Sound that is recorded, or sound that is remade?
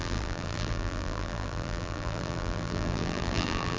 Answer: remade